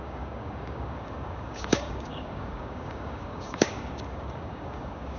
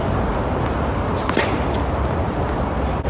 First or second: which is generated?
first